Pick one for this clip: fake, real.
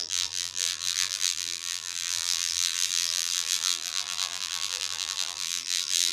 fake